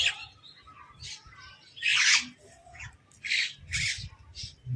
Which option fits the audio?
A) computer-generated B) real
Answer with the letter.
B